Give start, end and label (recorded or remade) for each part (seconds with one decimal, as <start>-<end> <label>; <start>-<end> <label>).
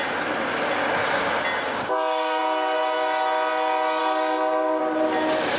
0.0-1.7 recorded; 1.7-2.4 remade; 2.4-4.0 recorded; 4.0-4.8 remade; 4.8-5.6 recorded